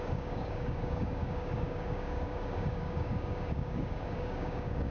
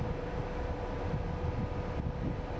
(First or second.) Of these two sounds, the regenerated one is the first